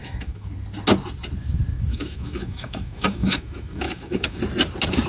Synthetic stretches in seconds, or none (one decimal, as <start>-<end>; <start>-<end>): 0.0-0.5; 1.9-4.4